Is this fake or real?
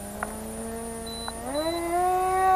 real